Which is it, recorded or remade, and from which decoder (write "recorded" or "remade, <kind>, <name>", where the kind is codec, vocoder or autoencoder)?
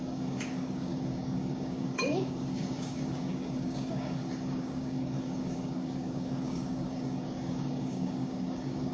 remade, codec, DAC